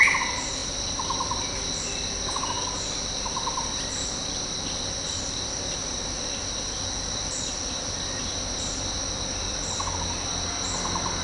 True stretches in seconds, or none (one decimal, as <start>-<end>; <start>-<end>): 0.0-11.2